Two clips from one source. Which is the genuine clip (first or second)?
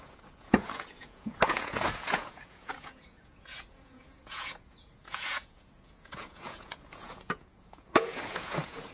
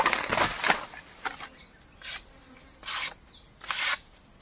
second